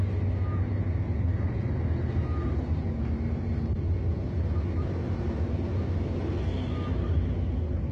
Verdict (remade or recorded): recorded